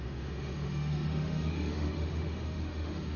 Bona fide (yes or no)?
no